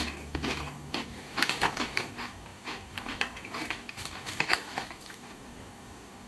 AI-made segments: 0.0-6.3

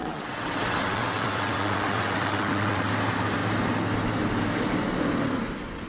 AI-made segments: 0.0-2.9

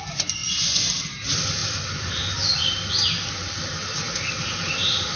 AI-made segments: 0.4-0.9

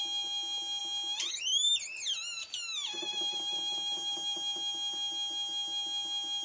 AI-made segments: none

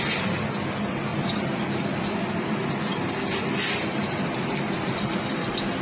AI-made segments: none

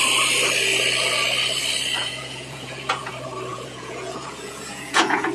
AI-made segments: 2.0-3.1; 3.5-5.3